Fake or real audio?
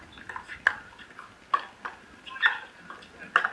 real